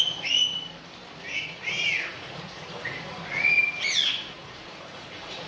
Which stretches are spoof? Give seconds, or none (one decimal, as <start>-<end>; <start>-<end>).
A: 0.0-0.4; 1.2-5.5